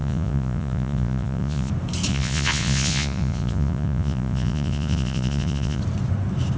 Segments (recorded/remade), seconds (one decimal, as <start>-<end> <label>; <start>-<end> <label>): 0.0-1.7 remade; 1.7-2.1 recorded; 2.1-5.8 remade; 5.8-6.6 recorded

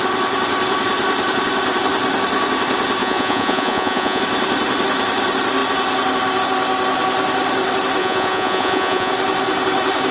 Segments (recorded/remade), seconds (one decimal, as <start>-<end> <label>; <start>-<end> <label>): 0.0-3.0 recorded; 3.0-4.2 remade; 4.2-8.0 recorded; 8.0-9.1 remade; 9.1-10.1 recorded

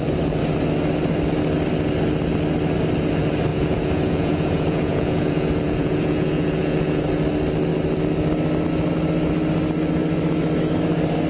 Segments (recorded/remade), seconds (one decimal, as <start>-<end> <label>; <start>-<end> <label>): 0.0-3.5 recorded; 3.5-7.0 remade; 7.0-11.3 recorded